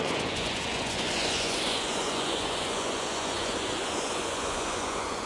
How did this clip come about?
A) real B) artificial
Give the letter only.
B